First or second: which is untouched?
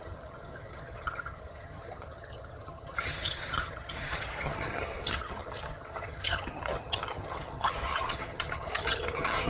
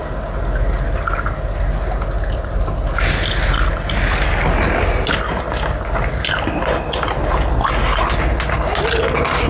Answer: second